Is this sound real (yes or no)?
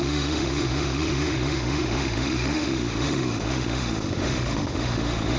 no